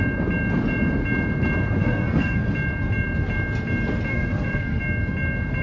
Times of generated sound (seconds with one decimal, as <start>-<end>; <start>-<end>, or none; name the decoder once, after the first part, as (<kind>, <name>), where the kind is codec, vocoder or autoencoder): 1.8-2.5 (codec, SNAC); 4.1-4.8